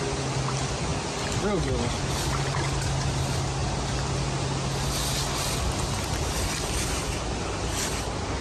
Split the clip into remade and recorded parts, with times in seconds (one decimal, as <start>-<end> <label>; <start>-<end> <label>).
0.0-8.4 recorded